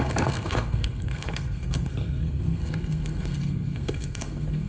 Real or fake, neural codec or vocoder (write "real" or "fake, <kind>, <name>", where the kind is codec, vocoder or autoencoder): fake, codec, SNAC